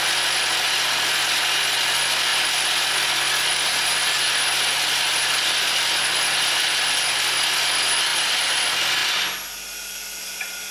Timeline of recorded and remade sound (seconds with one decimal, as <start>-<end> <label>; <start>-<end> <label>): 0.0-10.7 recorded